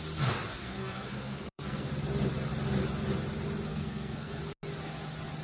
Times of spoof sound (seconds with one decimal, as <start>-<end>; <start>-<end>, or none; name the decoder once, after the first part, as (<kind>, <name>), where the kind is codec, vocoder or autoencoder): 0.5-1.9 (codec, SNAC); 3.7-4.4